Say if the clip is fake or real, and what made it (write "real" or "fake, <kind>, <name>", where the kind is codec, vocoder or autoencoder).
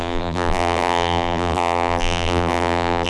fake, vocoder, BigVGAN v2